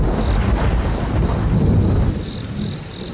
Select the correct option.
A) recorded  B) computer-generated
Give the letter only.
A